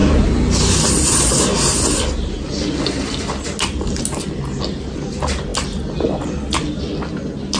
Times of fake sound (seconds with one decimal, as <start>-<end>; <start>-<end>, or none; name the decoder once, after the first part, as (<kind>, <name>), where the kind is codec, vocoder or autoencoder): none